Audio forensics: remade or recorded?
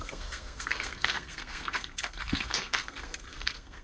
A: remade